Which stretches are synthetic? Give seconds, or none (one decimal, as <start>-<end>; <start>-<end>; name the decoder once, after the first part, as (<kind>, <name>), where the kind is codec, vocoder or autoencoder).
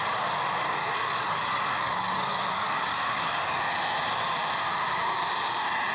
0.8-3.6 (codec, DAC)